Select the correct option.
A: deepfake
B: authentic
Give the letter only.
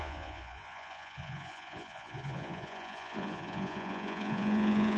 A